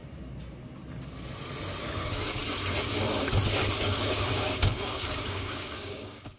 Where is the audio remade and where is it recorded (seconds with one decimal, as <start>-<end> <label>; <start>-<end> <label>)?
0.0-1.8 recorded; 1.8-2.4 remade; 2.4-3.8 recorded; 3.8-6.4 remade